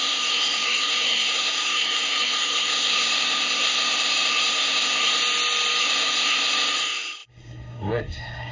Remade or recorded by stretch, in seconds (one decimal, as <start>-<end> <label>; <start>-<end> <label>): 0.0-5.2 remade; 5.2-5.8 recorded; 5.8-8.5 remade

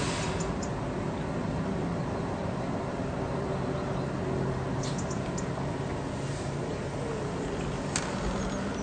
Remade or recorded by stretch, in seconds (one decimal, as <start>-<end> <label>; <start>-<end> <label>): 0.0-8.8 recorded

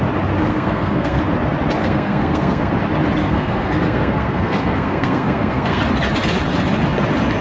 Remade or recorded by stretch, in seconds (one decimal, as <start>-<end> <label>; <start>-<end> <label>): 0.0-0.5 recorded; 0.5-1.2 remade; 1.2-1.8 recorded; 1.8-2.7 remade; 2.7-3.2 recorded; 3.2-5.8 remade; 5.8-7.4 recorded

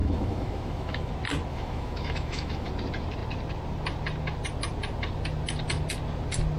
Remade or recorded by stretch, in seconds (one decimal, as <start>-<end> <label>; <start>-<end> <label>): 0.0-1.1 remade; 1.1-1.5 recorded; 1.5-2.7 remade; 2.7-6.6 recorded